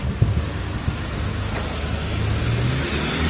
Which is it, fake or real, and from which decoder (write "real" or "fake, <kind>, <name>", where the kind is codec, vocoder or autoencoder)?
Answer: real